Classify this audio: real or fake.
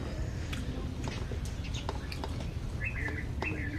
real